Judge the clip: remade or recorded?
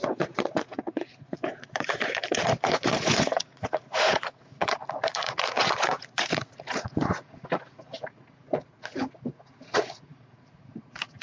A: remade